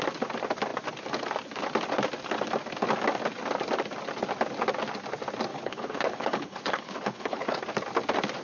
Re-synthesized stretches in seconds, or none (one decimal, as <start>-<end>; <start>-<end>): 5.5-7.6